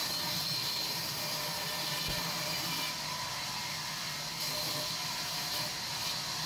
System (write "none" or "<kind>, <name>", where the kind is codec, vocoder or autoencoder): none